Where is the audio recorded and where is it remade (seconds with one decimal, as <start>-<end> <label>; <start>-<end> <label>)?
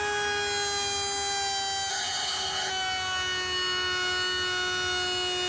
0.0-1.9 recorded; 1.9-2.7 remade; 2.7-5.5 recorded